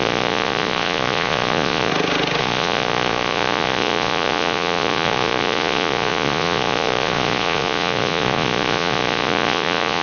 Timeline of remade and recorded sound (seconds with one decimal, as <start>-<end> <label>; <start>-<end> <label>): 0.0-1.9 remade; 1.9-2.4 recorded; 2.4-10.0 remade

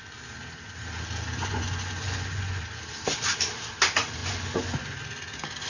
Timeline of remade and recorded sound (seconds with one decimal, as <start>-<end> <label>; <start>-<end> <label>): 0.0-1.4 recorded; 1.4-2.6 remade; 2.6-4.2 recorded; 4.2-5.0 remade; 5.0-5.7 recorded

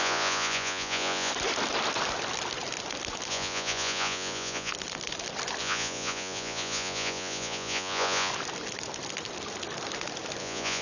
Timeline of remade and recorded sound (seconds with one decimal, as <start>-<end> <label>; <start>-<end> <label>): 0.0-1.3 remade; 1.3-3.3 recorded; 3.3-4.7 remade; 4.7-5.6 recorded; 5.6-8.3 remade; 8.3-10.4 recorded; 10.4-10.8 remade

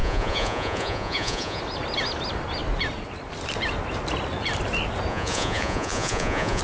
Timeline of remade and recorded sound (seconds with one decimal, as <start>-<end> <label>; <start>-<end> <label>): 0.0-1.6 remade; 1.6-5.1 recorded; 5.1-6.6 remade

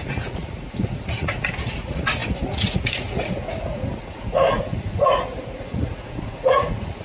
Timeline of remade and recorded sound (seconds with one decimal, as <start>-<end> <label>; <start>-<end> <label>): 0.0-7.0 remade

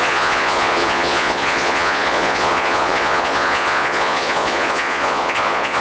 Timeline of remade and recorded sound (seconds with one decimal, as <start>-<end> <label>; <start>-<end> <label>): 0.0-5.8 remade